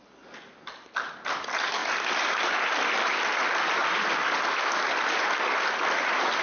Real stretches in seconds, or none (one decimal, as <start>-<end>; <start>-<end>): 0.0-6.4